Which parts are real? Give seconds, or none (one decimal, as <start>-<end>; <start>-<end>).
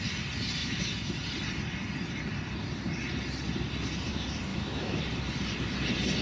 0.0-0.6; 1.1-4.5; 5.0-6.2